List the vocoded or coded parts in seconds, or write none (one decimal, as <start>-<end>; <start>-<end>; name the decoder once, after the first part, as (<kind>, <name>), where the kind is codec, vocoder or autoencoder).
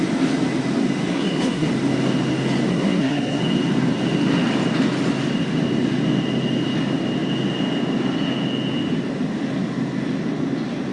1.1-1.7 (codec, SNAC); 2.7-3.4